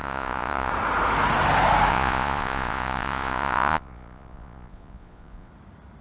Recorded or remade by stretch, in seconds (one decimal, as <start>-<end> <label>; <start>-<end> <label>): 0.0-0.7 remade; 0.7-1.9 recorded; 1.9-5.5 remade; 5.5-6.0 recorded